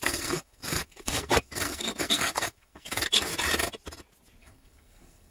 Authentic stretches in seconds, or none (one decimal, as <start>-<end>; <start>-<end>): 3.3-4.4